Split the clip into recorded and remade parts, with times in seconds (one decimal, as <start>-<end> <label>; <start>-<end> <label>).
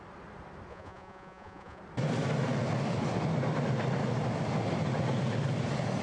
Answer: 0.0-0.7 recorded; 0.7-1.8 remade; 1.8-6.0 recorded